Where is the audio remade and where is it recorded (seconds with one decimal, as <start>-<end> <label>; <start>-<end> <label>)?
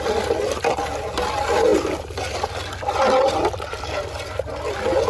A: 0.0-5.1 recorded